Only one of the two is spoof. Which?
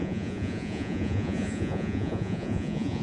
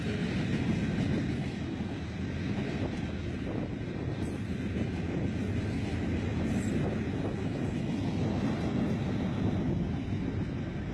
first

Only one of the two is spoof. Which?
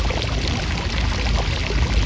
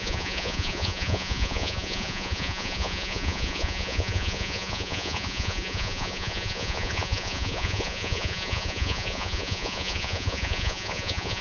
second